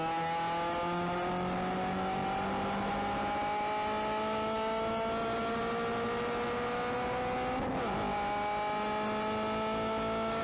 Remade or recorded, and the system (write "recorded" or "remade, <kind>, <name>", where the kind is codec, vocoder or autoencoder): recorded